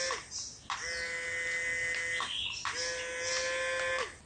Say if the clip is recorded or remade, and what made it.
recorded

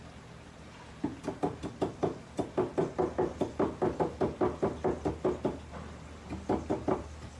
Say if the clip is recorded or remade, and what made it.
recorded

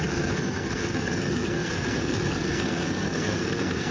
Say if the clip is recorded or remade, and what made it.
remade, codec, SNAC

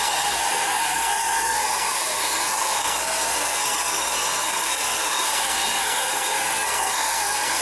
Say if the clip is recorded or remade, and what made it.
remade, codec, SNAC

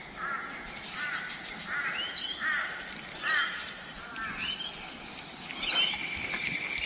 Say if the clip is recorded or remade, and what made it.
recorded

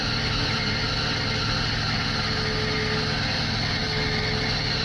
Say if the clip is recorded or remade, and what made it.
recorded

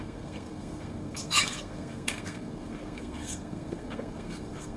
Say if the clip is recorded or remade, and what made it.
remade, codec, SNAC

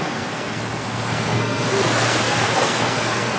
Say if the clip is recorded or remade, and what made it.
remade, codec, SNAC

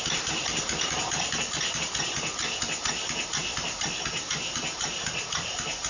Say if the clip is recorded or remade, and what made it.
recorded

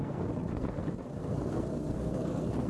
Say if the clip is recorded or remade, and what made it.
remade, codec, SNAC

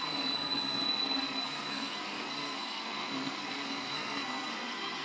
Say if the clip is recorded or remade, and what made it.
remade, codec, SNAC